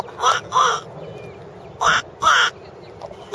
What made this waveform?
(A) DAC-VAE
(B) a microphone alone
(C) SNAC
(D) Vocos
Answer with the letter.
B